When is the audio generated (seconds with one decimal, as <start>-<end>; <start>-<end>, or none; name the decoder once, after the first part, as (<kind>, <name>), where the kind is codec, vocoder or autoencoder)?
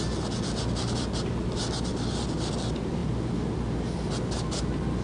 none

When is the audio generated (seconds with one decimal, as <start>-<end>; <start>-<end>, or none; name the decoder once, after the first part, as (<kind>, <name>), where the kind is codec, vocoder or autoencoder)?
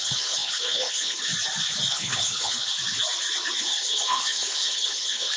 0.0-1.3 (codec, HILCodec); 1.9-2.7; 3.6-5.4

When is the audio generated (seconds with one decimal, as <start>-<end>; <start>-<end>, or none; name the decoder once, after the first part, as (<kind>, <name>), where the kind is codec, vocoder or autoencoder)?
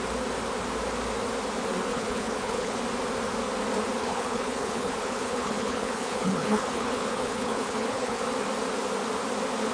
1.9-2.8 (codec, HILCodec); 4.0-8.2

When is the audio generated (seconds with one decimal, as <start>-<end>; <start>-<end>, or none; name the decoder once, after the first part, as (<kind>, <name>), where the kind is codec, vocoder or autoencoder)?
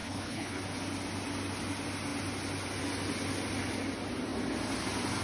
0.0-0.6 (codec, HILCodec)